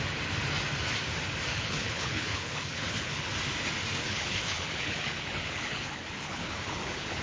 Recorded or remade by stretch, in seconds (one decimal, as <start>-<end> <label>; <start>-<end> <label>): 0.0-1.5 recorded; 1.5-3.3 remade; 3.3-4.0 recorded; 4.0-7.2 remade